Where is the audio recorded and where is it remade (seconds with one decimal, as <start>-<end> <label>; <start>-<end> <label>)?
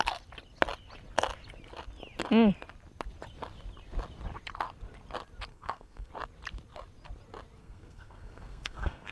0.0-5.5 recorded; 5.5-6.1 remade; 6.1-7.6 recorded; 7.6-9.1 remade